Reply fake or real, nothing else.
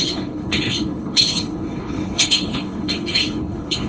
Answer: fake